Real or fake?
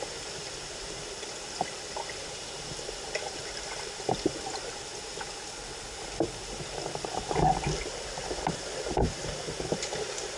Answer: real